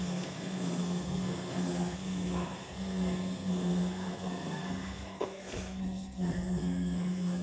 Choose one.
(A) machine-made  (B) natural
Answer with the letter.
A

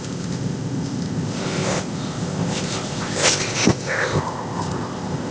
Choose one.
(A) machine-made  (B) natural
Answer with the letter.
A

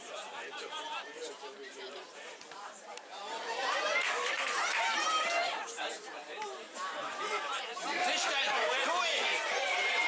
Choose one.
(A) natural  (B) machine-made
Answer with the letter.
B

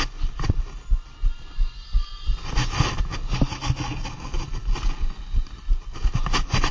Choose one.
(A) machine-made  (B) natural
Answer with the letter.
B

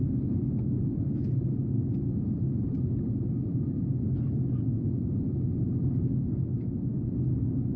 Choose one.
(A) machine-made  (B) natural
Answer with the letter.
B